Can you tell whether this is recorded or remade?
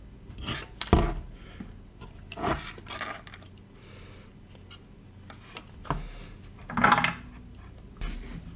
recorded